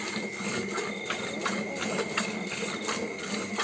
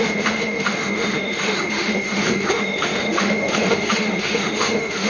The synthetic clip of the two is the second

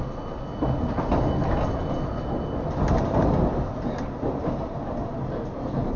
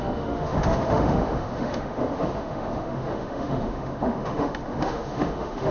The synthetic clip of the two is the second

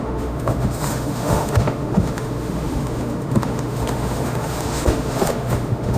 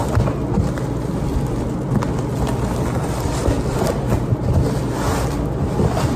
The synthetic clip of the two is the first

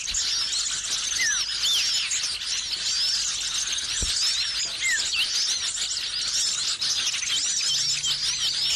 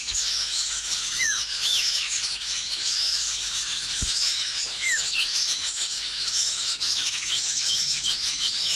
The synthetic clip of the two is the second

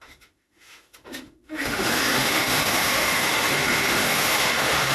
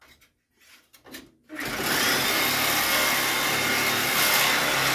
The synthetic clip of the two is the first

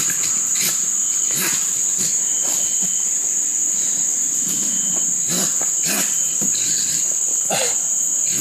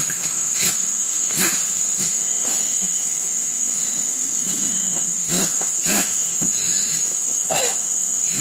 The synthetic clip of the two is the second